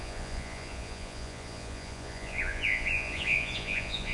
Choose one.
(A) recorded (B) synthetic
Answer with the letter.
B